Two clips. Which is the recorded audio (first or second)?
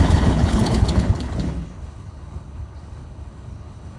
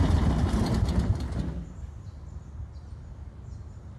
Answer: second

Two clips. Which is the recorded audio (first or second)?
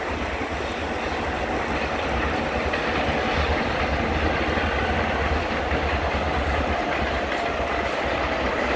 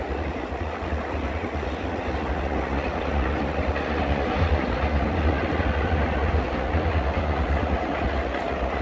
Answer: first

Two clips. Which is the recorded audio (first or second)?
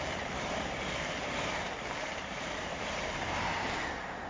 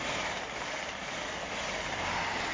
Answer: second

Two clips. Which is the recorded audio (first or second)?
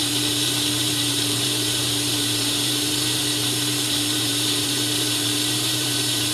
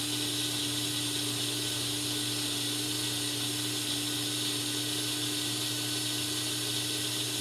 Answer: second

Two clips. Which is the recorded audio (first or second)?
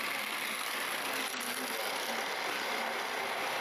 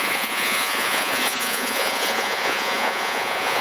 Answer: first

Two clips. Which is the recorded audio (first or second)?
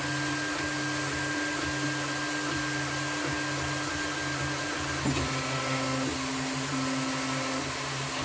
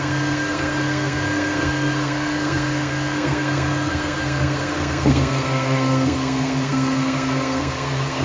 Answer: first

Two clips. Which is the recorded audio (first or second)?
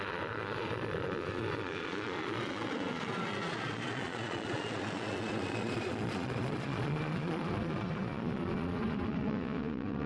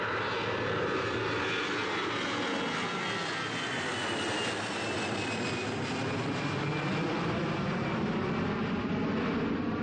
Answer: second